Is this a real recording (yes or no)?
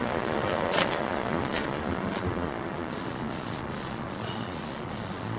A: no